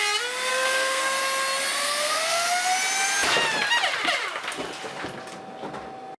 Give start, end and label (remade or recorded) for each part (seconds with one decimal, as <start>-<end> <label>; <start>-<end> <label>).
0.0-0.5 recorded; 0.5-1.2 remade; 1.2-1.8 recorded; 1.8-2.5 remade; 2.5-6.2 recorded